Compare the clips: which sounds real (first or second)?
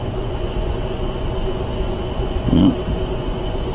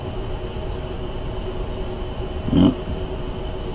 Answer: second